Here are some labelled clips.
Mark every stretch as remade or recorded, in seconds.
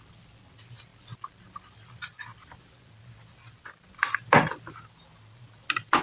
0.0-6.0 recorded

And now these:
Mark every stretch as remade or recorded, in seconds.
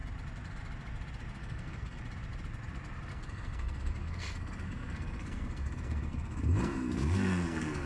0.0-1.4 recorded; 1.4-2.0 remade; 2.0-3.1 recorded; 3.1-7.9 remade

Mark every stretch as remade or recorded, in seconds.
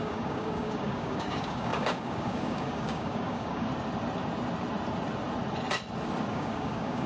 0.0-3.7 remade; 3.7-6.3 recorded; 6.3-7.1 remade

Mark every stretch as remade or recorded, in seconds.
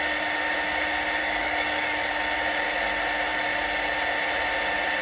0.0-1.2 recorded; 1.2-2.1 remade; 2.1-5.0 recorded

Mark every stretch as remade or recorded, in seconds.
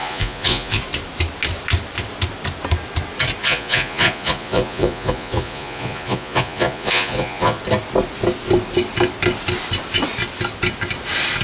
0.0-0.8 remade; 0.8-3.4 recorded; 3.4-7.6 remade; 7.6-11.4 recorded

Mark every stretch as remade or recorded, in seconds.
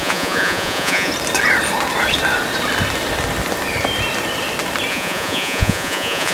0.0-1.1 remade; 1.1-4.9 recorded; 4.9-6.3 remade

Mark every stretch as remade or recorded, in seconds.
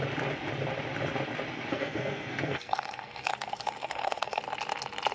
0.0-1.7 recorded; 1.7-4.4 remade; 4.4-5.1 recorded